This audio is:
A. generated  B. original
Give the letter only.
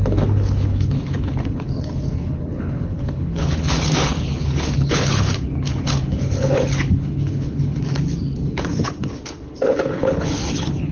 A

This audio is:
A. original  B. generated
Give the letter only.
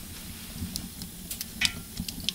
A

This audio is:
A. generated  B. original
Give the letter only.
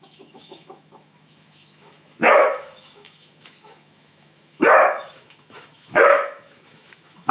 A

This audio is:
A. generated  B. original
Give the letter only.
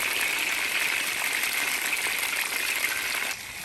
B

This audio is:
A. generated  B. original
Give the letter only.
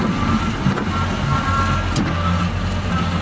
B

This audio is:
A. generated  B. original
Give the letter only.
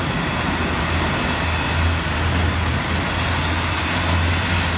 B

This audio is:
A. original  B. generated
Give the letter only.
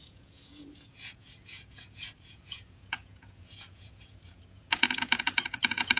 B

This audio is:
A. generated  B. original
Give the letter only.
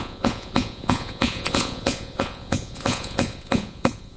A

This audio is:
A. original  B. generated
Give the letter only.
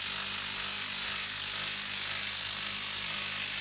A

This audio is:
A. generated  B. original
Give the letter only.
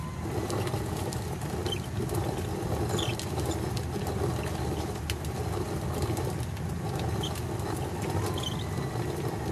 B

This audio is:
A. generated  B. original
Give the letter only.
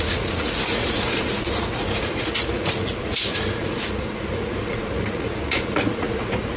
A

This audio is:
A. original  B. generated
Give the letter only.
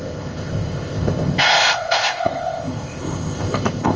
B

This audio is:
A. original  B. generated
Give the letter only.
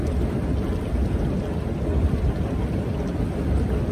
A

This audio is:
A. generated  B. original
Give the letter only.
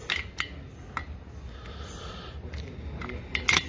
B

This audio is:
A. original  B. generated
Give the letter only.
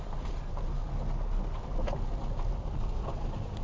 A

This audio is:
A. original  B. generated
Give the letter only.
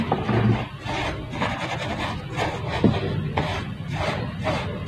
A